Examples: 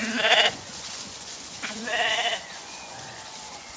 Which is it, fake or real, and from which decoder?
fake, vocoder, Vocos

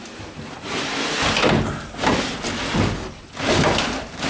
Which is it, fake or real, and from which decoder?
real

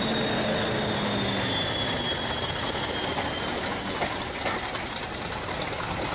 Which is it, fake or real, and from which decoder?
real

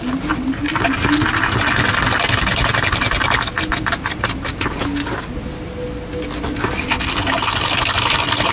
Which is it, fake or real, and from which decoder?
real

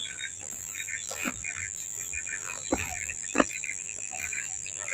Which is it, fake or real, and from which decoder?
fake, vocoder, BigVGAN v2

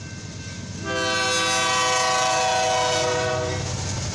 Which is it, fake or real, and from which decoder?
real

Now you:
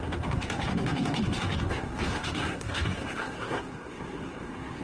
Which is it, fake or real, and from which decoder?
fake, codec, SNAC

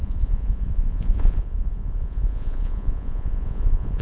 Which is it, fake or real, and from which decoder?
fake, vocoder, Vocos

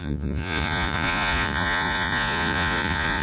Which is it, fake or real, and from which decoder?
fake, vocoder, Vocos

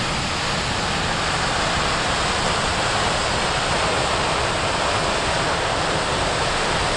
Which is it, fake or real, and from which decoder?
real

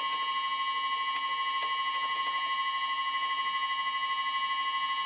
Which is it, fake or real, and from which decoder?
real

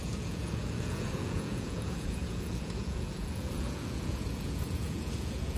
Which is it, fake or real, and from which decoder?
fake, vocoder, Vocos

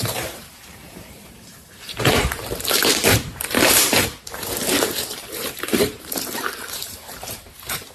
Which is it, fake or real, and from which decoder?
fake, vocoder, BigVGAN v2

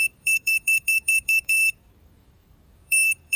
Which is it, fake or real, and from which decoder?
fake, codec, DAC